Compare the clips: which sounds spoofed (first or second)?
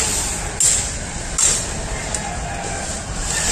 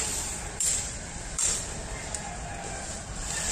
second